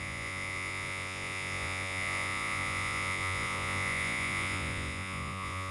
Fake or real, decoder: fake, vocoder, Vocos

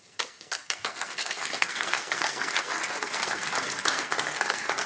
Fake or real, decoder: fake, codec, SNAC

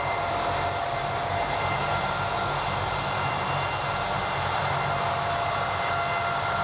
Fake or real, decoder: real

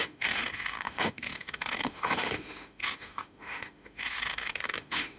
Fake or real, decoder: fake, autoencoder, DAC-VAE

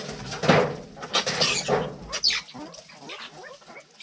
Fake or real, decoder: real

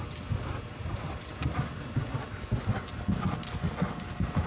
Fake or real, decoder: real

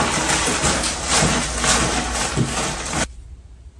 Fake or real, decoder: real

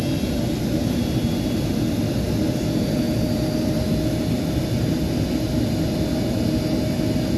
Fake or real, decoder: real